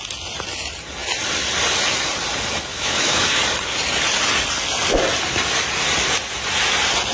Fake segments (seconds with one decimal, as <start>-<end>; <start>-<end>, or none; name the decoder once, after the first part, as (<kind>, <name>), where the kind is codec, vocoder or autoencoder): 2.7-3.4 (autoencoder, DAC-VAE)